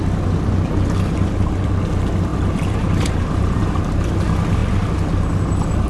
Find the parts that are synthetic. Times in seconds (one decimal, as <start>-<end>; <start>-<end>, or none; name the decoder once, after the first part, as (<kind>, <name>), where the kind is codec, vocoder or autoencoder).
2.3-3.8 (vocoder, BigVGAN v2)